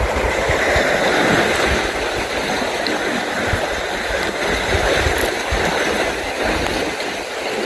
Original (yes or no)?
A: yes